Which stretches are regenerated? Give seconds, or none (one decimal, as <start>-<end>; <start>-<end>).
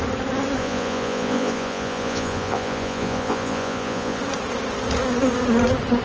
0.6-4.2